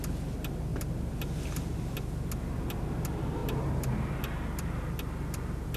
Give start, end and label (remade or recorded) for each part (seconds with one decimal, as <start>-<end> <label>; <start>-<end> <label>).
0.0-5.8 recorded